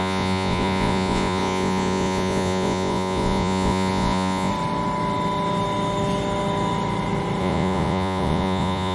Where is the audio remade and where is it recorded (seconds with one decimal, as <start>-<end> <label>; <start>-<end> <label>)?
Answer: 0.0-4.5 remade; 4.5-7.4 recorded; 7.4-8.9 remade